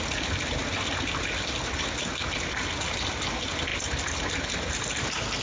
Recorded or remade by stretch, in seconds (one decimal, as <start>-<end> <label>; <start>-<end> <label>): 0.0-5.4 recorded